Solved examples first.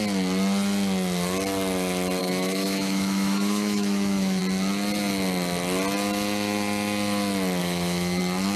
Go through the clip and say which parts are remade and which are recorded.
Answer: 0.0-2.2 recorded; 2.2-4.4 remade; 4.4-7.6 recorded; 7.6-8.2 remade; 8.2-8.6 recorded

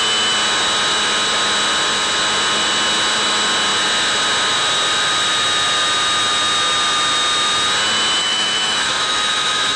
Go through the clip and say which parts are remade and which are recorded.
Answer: 0.0-8.2 recorded; 8.2-9.8 remade

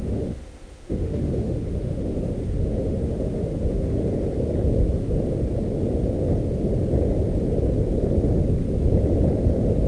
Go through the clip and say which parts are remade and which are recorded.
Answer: 0.0-4.0 remade; 4.0-9.9 recorded